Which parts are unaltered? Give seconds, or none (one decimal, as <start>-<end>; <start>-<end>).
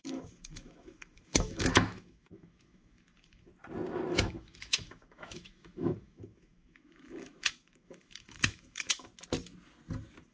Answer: 3.5-4.1; 9.1-10.3